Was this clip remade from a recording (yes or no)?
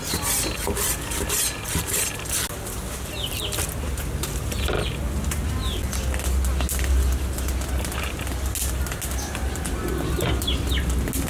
no